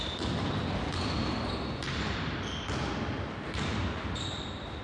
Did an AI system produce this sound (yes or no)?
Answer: yes